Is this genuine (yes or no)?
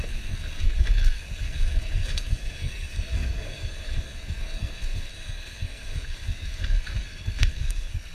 no